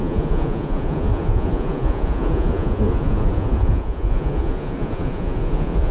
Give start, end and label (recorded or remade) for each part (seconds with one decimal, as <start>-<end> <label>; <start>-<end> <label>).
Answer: 0.0-5.9 remade